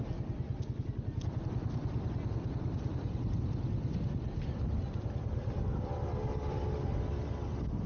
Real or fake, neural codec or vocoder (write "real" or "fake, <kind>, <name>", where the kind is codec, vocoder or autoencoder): real